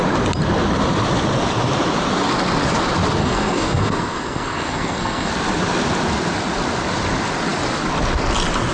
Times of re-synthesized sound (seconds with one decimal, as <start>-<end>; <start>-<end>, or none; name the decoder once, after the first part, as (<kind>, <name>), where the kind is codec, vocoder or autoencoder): 3.2-5.3 (codec, SNAC)